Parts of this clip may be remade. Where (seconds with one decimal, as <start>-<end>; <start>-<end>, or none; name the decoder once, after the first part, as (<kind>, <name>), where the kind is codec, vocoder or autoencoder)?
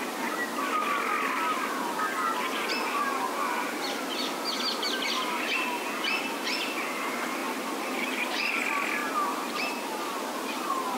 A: 7.4-8.6 (vocoder, BigVGAN v2); 9.0-10.2